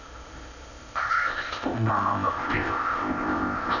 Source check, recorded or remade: remade